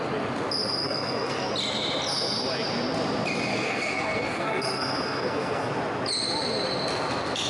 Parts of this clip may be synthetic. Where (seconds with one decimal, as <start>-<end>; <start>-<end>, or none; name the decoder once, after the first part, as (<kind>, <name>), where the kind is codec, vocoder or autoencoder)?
0.8-1.5 (codec, SNAC); 3.5-5.7